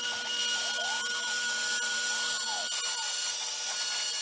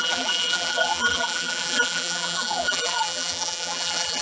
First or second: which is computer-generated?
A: second